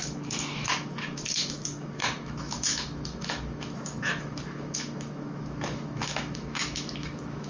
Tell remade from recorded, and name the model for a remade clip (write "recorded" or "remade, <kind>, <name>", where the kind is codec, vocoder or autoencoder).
remade, autoencoder, DAC-VAE